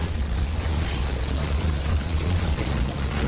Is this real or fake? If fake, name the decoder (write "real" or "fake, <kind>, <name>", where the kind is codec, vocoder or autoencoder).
fake, vocoder, Vocos